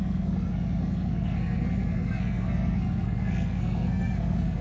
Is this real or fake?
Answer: fake